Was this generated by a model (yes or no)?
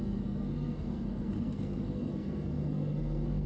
yes